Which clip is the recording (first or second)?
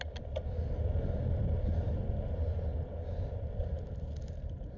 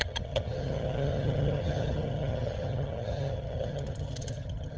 first